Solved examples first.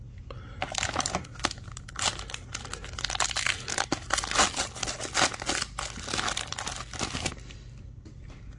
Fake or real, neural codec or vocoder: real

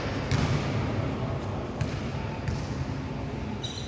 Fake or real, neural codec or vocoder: real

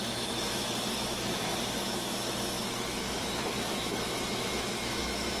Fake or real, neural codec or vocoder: fake, autoencoder, DAC-VAE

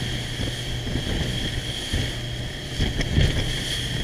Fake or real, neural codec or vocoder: real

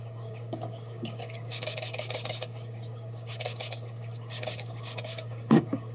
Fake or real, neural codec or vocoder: fake, codec, DAC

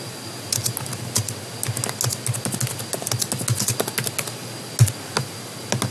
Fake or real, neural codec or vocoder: real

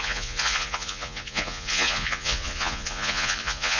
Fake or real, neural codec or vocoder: fake, vocoder, Vocos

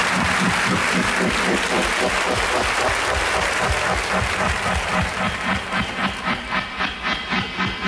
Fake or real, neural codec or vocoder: real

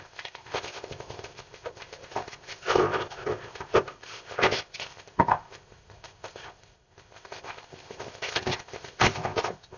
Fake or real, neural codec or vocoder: fake, codec, ZipCodec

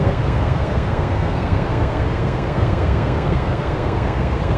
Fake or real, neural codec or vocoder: fake, codec, SNAC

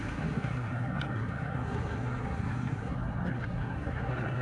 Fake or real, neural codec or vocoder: fake, codec, SNAC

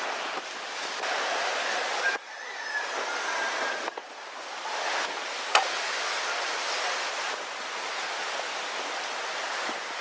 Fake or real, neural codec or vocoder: real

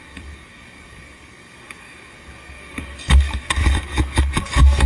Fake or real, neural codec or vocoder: fake, codec, DAC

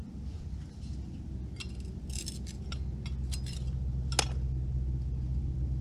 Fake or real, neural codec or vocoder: real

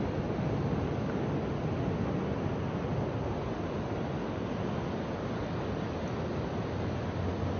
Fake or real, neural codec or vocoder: real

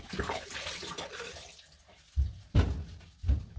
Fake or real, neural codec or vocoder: real